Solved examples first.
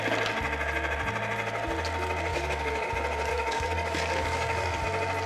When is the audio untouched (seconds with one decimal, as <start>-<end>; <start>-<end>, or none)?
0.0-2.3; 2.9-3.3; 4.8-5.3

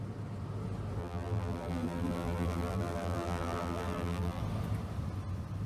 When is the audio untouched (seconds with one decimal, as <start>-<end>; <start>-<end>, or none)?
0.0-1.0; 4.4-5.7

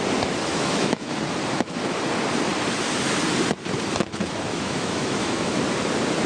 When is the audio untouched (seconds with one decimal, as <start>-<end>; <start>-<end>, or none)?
0.0-0.5; 1.1-4.5; 5.6-6.3